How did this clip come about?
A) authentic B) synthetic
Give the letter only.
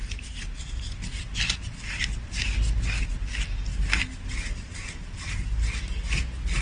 A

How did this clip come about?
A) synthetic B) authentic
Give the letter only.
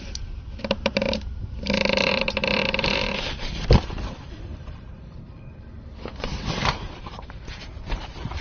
A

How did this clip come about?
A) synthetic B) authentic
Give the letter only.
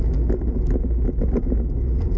B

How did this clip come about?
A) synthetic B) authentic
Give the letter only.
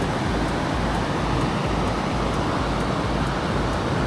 B